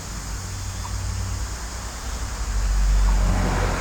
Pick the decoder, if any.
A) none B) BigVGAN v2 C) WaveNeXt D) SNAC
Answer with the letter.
A